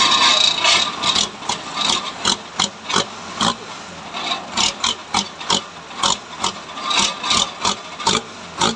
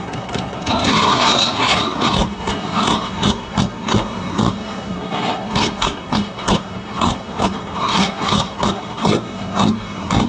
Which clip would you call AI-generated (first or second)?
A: second